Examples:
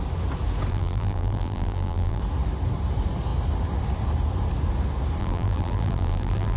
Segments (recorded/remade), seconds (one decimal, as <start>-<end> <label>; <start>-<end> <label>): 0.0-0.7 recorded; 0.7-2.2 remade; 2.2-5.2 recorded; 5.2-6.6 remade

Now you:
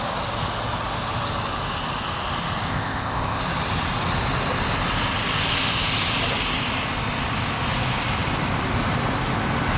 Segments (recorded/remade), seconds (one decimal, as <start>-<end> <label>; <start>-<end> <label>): 0.0-2.7 recorded; 2.7-3.4 remade; 3.4-9.8 recorded

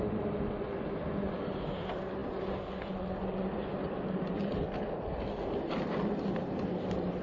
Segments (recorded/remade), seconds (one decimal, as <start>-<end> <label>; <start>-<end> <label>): 0.0-7.2 recorded

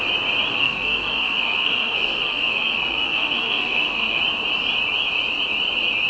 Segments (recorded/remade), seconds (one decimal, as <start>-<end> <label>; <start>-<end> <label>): 0.0-0.5 recorded; 0.5-4.2 remade; 4.2-6.1 recorded

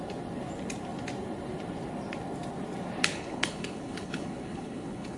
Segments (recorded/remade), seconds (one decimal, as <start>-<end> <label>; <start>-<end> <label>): 0.0-3.1 recorded; 3.1-5.2 remade

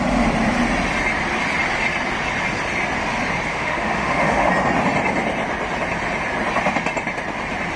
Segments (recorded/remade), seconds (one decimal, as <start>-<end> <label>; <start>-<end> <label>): 0.0-3.5 recorded; 3.5-4.5 remade; 4.5-7.8 recorded